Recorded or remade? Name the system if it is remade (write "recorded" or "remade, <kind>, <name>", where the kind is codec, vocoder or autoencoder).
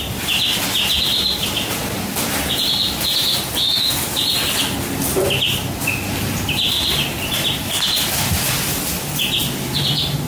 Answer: recorded